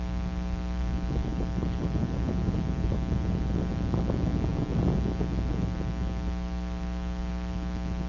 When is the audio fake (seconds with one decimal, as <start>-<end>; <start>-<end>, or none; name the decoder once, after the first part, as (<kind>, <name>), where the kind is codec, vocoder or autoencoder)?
1.3-3.7 (vocoder, BigVGAN v2)